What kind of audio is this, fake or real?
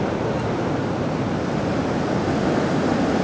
real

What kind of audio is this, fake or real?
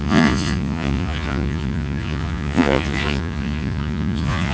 fake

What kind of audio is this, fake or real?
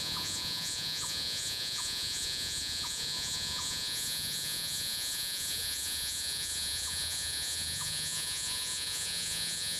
fake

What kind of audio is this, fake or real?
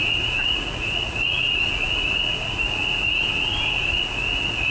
fake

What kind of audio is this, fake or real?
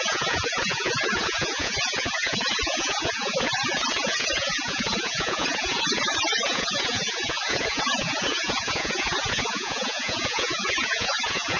fake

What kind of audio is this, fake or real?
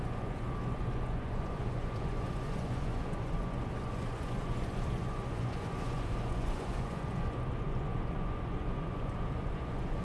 fake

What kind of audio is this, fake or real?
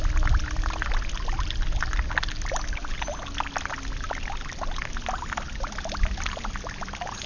real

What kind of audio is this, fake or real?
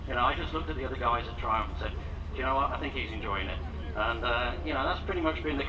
real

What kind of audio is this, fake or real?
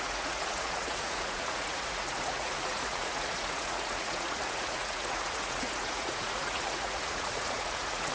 fake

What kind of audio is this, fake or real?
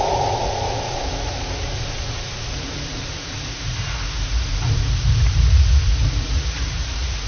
fake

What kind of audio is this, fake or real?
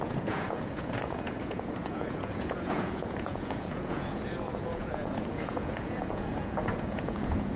fake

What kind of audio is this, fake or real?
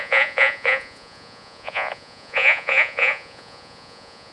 fake